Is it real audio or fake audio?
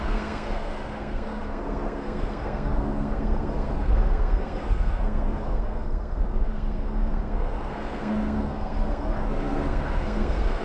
fake